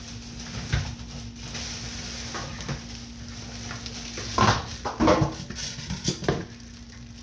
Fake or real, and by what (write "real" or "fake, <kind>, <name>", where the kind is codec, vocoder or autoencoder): real